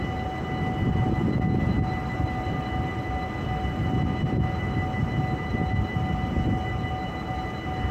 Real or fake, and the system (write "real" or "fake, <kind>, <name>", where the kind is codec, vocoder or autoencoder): real